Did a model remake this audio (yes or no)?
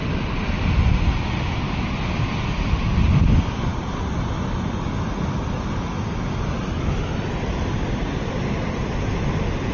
no